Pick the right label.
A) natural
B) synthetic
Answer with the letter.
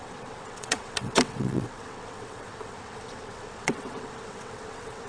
B